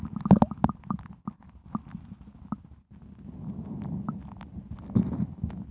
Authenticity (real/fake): real